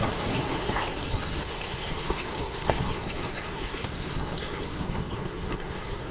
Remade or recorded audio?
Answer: remade